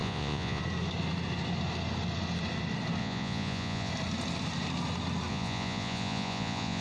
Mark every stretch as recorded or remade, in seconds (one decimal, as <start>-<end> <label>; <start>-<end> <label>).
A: 0.0-0.6 remade; 0.6-3.0 recorded; 3.0-3.9 remade; 3.9-5.3 recorded; 5.3-6.8 remade